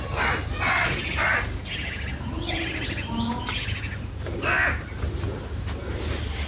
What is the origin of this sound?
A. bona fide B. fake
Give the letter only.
A